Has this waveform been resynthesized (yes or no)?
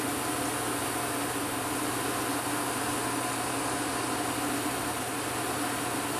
no